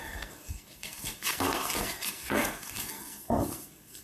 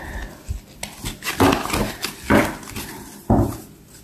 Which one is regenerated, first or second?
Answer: first